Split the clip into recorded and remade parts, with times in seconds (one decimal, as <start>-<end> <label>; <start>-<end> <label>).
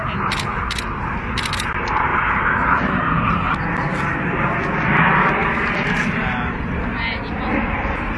0.0-8.2 recorded